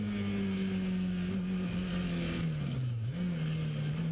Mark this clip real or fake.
real